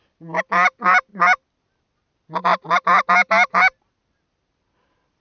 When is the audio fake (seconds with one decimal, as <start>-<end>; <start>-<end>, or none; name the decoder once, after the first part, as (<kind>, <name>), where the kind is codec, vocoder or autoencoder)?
none